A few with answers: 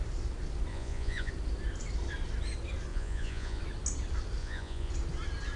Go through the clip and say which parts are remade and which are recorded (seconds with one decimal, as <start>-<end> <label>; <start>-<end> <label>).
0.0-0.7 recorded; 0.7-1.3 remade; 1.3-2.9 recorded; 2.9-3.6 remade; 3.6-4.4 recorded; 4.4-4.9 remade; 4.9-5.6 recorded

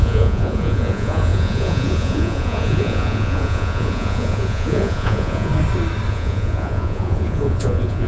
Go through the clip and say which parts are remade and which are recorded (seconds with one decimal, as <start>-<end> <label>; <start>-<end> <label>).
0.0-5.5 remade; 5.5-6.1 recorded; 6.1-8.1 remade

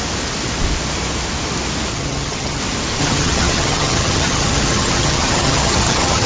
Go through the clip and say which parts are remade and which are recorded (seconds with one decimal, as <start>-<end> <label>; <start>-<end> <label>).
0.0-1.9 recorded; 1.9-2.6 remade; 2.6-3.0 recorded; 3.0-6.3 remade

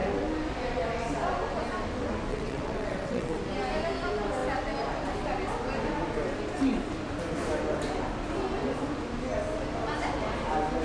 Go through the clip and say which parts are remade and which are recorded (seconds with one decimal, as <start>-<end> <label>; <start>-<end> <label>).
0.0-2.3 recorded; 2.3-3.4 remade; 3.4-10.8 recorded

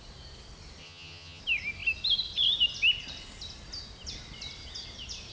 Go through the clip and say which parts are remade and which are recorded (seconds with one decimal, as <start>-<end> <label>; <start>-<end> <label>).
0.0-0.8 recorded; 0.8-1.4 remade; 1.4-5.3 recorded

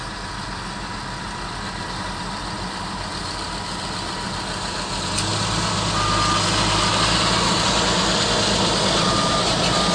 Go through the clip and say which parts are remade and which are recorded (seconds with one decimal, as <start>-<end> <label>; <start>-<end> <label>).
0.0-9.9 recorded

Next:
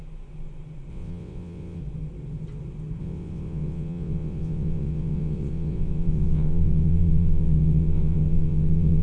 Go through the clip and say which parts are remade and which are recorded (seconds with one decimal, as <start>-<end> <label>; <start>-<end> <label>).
0.0-0.9 recorded; 0.9-1.8 remade; 1.8-3.0 recorded; 3.0-9.0 remade

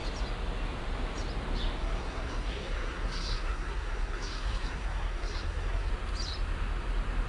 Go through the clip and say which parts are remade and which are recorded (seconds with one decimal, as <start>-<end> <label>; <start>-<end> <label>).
0.0-1.8 recorded; 1.8-5.9 remade; 5.9-7.3 recorded